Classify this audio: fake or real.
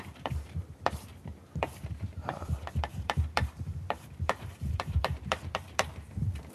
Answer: fake